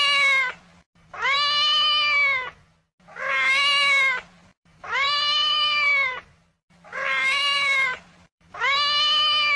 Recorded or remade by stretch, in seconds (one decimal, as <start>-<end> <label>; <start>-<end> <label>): 0.0-4.5 recorded; 4.5-8.6 remade; 8.6-9.6 recorded